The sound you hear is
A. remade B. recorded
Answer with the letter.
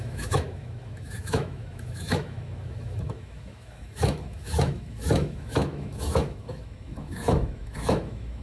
A